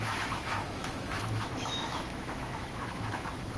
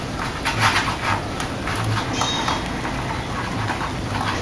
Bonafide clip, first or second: second